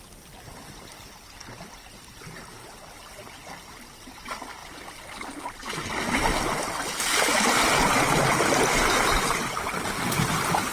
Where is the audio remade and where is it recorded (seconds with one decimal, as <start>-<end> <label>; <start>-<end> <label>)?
0.0-10.7 recorded